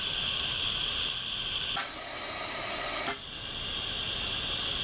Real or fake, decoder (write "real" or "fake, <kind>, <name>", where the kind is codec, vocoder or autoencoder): real